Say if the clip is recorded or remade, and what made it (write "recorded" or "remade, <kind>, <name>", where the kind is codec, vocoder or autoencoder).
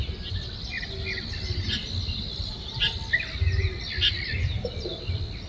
recorded